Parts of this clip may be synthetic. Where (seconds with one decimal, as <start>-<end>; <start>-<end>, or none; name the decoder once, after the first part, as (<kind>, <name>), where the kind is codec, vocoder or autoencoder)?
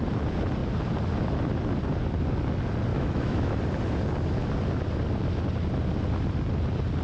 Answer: 2.9-3.6 (autoencoder, DAC-VAE)